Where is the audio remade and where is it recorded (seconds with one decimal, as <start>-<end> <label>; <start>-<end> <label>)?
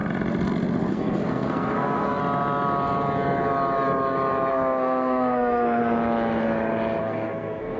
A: 0.0-0.9 recorded; 0.9-2.2 remade; 2.2-4.5 recorded; 4.5-5.8 remade; 5.8-7.0 recorded; 7.0-7.8 remade